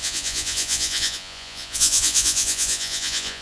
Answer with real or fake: fake